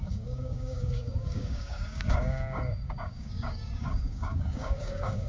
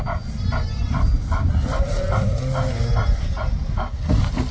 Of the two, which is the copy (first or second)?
first